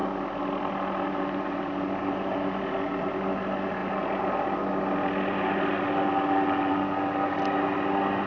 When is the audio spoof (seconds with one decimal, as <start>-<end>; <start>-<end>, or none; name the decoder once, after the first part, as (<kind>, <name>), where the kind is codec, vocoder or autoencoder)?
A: none